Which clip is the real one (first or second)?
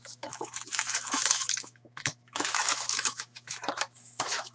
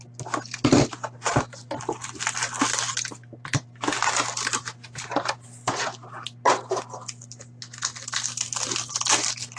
second